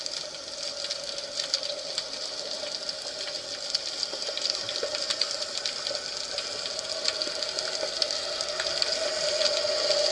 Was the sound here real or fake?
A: real